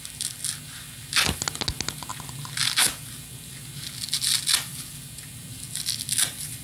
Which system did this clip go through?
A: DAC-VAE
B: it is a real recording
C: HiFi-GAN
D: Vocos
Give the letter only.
B